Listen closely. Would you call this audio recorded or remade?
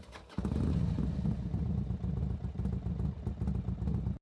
recorded